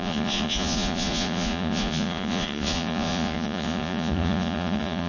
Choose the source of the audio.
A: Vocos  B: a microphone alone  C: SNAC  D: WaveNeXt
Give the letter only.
A